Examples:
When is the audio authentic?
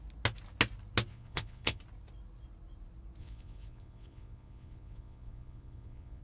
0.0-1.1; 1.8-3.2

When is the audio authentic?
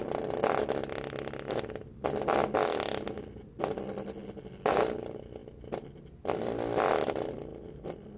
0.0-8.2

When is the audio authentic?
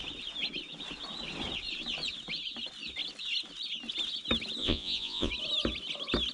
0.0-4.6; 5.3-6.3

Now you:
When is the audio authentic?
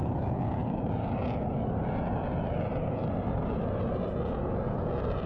0.0-5.3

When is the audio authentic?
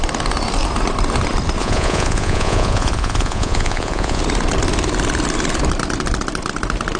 0.0-1.6; 4.2-7.0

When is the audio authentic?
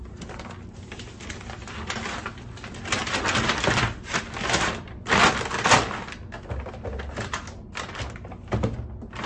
0.0-9.3